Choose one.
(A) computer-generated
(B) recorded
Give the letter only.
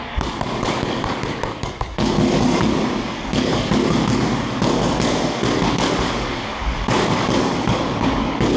A